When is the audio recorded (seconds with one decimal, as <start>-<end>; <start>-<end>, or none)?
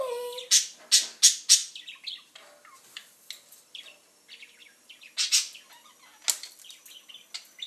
0.0-7.7